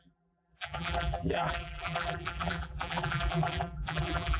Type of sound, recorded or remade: remade